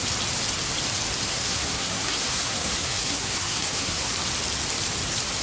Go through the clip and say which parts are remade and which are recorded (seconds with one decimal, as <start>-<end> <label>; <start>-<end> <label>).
0.0-1.3 recorded; 1.3-4.1 remade; 4.1-5.4 recorded